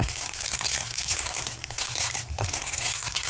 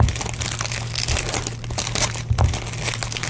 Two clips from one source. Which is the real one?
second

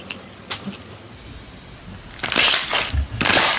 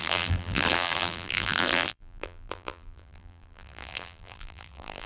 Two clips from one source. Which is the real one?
first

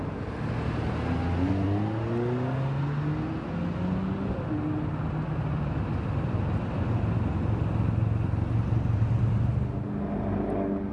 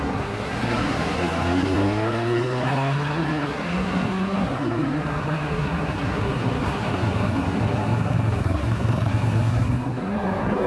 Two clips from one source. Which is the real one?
first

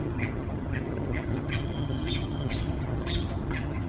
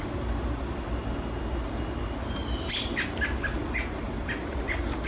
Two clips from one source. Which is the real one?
second